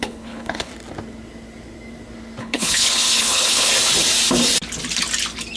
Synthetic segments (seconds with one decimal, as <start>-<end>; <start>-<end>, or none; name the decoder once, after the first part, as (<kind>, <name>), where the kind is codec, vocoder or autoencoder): 0.0-0.7 (codec, HILCodec); 2.4-3.7